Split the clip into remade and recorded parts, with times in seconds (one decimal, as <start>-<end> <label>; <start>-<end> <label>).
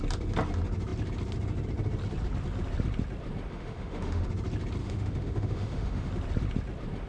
0.0-3.5 recorded; 3.5-4.3 remade; 4.3-4.8 recorded; 4.8-6.1 remade; 6.1-7.1 recorded